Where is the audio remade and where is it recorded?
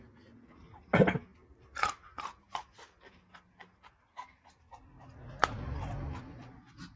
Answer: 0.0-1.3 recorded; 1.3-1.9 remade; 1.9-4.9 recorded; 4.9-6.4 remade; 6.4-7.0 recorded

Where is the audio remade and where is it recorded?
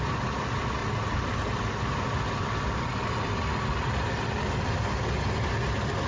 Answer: 0.0-6.1 recorded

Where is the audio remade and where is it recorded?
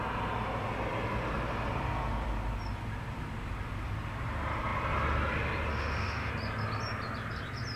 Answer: 0.0-5.7 recorded; 5.7-6.3 remade; 6.3-7.8 recorded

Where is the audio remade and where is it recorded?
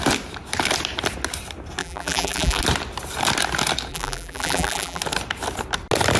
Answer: 0.0-1.8 recorded; 1.8-2.6 remade; 2.6-3.9 recorded; 3.9-5.0 remade; 5.0-6.2 recorded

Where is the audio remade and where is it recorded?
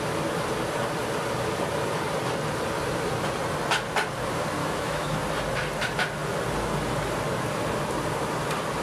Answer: 0.0-4.6 recorded; 4.6-5.2 remade; 5.2-8.8 recorded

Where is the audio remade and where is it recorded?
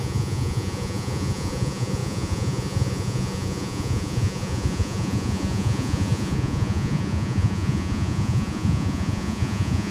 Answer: 0.0-9.9 remade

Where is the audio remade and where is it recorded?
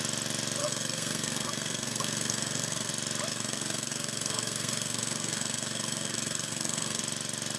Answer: 0.0-0.6 recorded; 0.6-2.9 remade; 2.9-3.3 recorded; 3.3-7.0 remade; 7.0-7.6 recorded